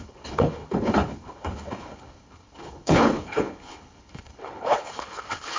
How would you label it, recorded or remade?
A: remade